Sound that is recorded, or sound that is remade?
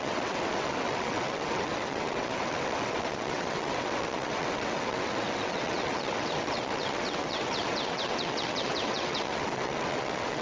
remade